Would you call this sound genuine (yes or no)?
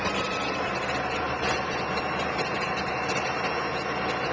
yes